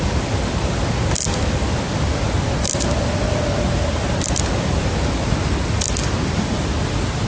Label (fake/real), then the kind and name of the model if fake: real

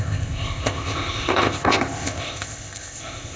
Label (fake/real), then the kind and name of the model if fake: fake, codec, ZipCodec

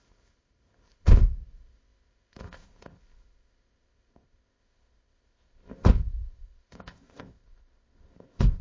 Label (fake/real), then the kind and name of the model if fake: fake, codec, ZipCodec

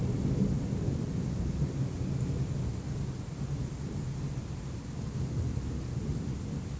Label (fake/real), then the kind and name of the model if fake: real